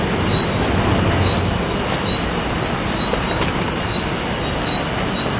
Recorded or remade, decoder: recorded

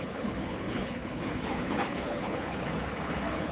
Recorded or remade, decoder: remade, codec, HILCodec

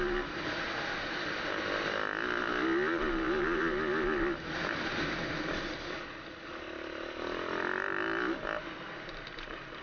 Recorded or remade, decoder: recorded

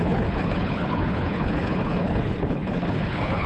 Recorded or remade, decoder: remade, codec, HILCodec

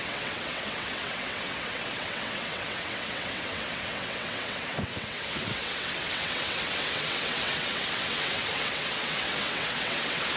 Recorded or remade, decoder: remade, vocoder, WaveNeXt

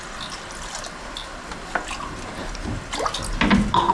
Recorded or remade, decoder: recorded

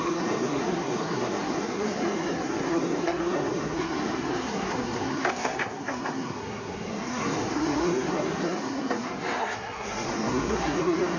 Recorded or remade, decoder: remade, codec, SNAC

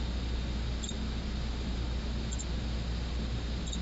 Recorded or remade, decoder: recorded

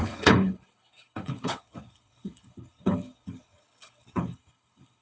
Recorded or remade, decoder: remade, codec, HILCodec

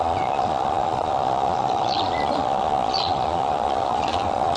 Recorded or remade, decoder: remade, vocoder, Vocos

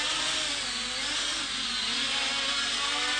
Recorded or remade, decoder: recorded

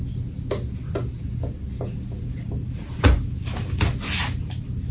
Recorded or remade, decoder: recorded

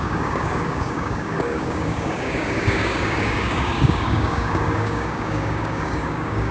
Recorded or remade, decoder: remade, codec, DAC